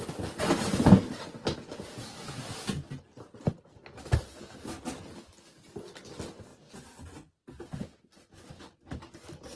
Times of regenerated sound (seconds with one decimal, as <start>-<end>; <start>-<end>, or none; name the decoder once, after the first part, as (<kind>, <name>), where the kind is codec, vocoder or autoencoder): 3.8-4.5 (vocoder, BigVGAN v2)